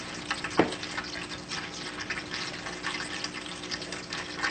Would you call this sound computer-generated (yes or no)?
no